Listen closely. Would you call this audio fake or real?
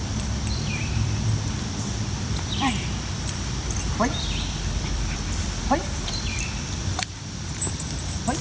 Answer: fake